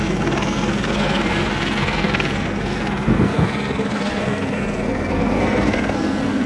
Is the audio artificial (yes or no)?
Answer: yes